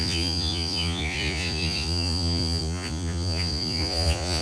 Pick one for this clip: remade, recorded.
remade